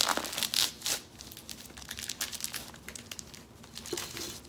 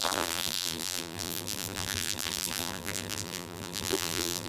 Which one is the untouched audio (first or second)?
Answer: first